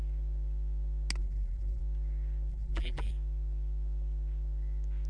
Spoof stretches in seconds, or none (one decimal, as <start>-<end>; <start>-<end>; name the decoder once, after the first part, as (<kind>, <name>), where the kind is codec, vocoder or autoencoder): 1.2-1.8 (vocoder, BigVGAN v2); 2.5-3.1